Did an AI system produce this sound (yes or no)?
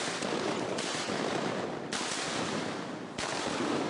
no